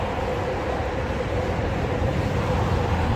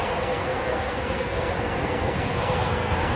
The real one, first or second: first